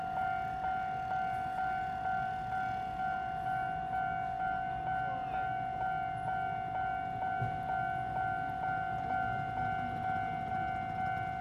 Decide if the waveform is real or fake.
real